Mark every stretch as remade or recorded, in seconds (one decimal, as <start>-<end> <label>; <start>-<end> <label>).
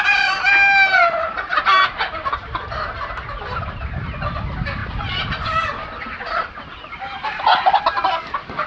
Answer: 0.0-8.7 recorded